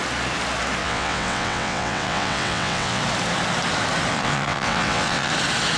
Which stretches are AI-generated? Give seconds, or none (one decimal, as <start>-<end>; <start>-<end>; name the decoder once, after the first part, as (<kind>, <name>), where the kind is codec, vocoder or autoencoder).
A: 0.8-3.0 (vocoder, WaveNeXt); 4.1-5.3

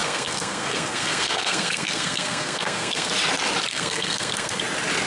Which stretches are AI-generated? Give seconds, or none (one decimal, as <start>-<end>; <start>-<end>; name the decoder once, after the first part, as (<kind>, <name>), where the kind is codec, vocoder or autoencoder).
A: 0.0-3.1 (codec, SNAC); 3.7-4.6

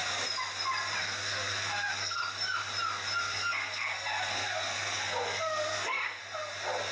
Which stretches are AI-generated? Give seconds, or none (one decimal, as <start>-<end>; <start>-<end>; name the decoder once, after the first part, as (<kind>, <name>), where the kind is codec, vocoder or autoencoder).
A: 1.0-2.2 (codec, SNAC); 3.2-6.2

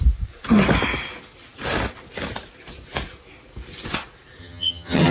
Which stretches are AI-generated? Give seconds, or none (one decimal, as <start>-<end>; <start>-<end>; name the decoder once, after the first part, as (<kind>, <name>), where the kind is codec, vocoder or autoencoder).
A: 4.4-5.1 (vocoder, HiFi-GAN)

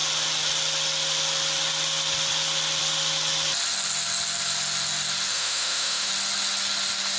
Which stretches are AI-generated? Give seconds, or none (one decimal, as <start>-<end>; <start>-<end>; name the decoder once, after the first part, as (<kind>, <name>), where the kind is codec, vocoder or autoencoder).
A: 5.3-6.1 (autoencoder, DAC-VAE)

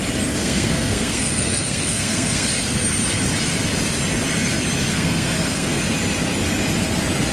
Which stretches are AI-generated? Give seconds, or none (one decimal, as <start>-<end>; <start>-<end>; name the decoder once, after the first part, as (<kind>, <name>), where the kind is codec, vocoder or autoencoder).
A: 0.4-2.5 (codec, SNAC); 4.9-5.8

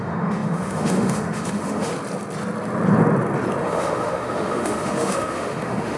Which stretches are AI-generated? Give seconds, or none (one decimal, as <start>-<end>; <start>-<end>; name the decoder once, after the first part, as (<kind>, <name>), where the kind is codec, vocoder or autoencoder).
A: 0.0-1.9 (autoencoder, DAC-VAE); 3.6-6.0

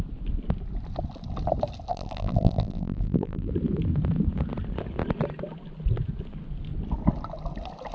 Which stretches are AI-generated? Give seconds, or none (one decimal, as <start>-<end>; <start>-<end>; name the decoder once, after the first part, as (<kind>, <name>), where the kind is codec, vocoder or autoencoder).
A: 1.9-3.5 (vocoder, BigVGAN v2)